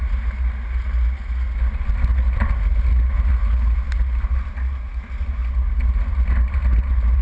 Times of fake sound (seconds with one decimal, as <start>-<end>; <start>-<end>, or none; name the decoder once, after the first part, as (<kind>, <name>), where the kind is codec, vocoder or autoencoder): none